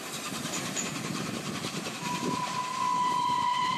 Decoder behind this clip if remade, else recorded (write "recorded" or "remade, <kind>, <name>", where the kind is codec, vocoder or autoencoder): remade, vocoder, BigVGAN v2